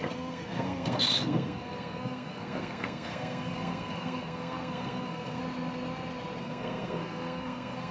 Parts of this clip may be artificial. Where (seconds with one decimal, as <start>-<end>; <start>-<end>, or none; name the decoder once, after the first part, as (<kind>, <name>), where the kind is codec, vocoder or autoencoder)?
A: 0.0-5.4 (codec, SNAC); 6.4-7.9